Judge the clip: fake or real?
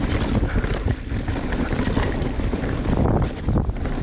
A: real